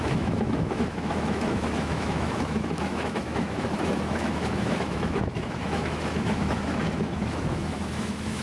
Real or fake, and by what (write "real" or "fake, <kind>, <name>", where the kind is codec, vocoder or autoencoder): fake, autoencoder, DAC-VAE